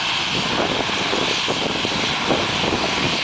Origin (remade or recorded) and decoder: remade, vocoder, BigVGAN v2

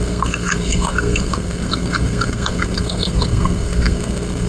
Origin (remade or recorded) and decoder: remade, codec, SNAC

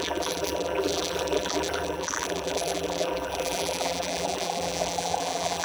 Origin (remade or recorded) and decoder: remade, vocoder, BigVGAN v2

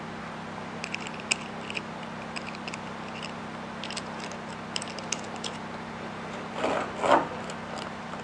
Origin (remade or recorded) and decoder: recorded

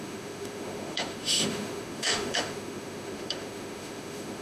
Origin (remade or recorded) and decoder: remade, autoencoder, DAC-VAE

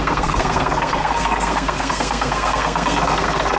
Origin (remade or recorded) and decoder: remade, codec, SNAC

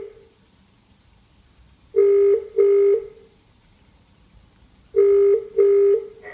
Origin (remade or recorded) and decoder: recorded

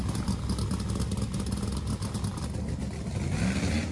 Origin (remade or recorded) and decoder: recorded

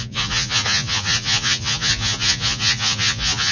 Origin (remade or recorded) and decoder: remade, vocoder, Vocos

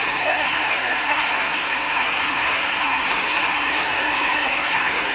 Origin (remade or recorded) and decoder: remade, codec, SNAC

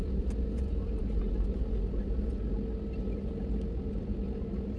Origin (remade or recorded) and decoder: recorded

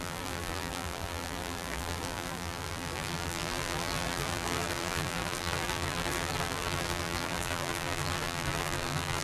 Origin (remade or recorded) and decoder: remade, vocoder, BigVGAN v2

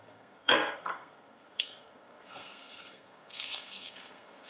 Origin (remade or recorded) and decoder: remade, codec, SNAC